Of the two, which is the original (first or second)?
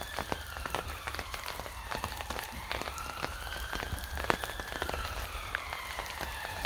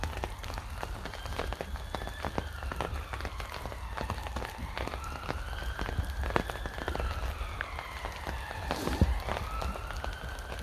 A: second